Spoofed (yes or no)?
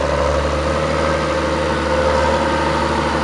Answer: no